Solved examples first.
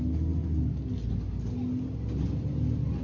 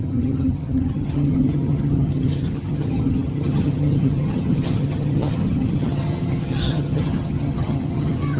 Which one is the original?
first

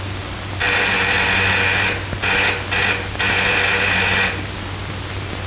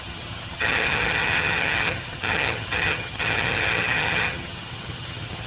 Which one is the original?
first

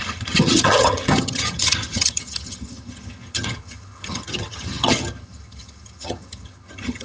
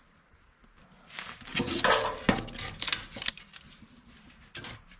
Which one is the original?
second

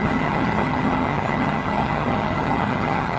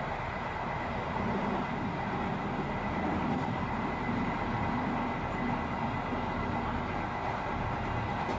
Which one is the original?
second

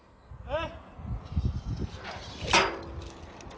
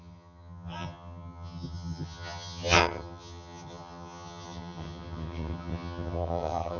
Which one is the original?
first